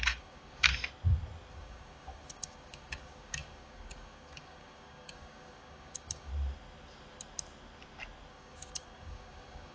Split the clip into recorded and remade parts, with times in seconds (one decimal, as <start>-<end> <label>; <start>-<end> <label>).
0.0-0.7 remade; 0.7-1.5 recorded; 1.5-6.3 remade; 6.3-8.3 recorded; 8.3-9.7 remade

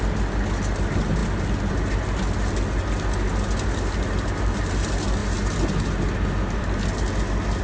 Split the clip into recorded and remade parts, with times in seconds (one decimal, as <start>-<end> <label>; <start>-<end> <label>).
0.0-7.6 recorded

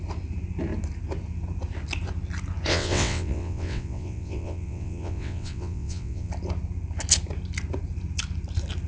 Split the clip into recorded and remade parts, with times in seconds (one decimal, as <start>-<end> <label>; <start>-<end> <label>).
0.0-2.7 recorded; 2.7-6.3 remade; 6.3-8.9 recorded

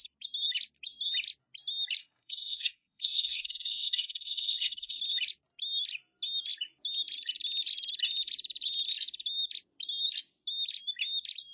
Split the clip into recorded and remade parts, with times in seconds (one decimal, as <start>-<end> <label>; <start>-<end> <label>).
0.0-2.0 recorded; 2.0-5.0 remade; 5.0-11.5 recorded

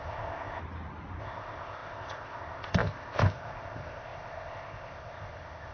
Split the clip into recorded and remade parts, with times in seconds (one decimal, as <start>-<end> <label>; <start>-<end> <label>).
0.0-0.6 remade; 0.6-1.2 recorded; 1.2-5.7 remade